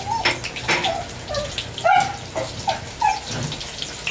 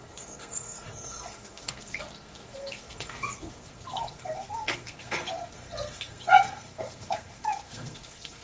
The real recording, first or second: first